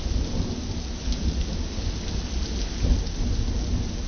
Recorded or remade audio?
recorded